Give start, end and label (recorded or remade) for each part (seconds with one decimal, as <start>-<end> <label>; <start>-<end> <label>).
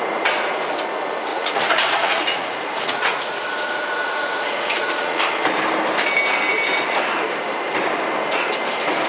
0.0-1.3 recorded; 1.3-5.2 remade; 5.2-9.1 recorded